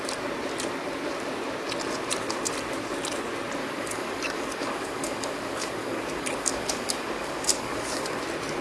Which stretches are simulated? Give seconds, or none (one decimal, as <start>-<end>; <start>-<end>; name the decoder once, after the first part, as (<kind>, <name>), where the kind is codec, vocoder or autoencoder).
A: 3.6-8.2 (codec, DAC)